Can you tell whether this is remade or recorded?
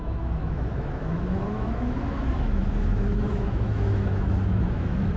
remade